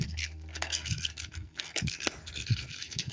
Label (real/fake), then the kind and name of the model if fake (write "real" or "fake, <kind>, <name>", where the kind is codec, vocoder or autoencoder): fake, codec, SNAC